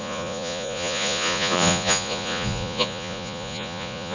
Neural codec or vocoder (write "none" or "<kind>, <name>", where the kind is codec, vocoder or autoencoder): vocoder, Vocos